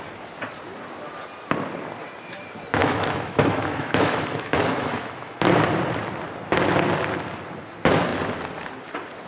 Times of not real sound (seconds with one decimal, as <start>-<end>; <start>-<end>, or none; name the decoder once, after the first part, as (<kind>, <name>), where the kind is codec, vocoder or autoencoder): 2.8-5.4 (autoencoder, DAC-VAE)